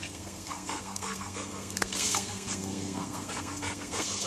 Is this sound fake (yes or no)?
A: yes